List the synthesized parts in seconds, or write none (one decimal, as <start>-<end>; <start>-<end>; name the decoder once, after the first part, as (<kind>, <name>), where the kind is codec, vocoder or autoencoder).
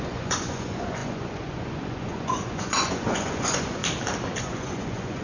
0.0-3.8 (vocoder, Vocos); 4.4-5.2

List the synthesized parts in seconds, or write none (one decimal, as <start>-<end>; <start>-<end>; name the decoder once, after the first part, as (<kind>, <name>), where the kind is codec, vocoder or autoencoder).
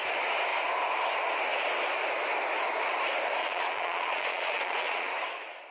3.4-5.1 (vocoder, Vocos)